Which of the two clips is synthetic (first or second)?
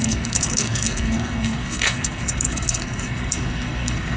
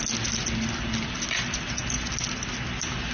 first